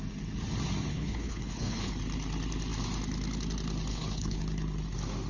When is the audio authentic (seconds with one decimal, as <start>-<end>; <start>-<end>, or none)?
0.0-0.9; 1.9-3.9; 4.4-5.3